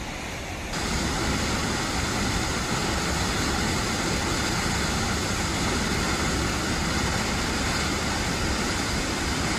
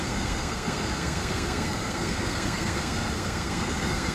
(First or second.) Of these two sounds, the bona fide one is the first